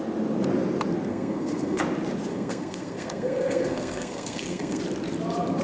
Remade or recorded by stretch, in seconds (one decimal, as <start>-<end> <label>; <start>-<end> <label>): 0.0-1.1 recorded; 1.1-1.8 remade; 1.8-2.3 recorded; 2.3-4.8 remade; 4.8-5.6 recorded